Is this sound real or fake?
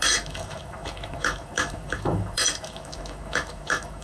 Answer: fake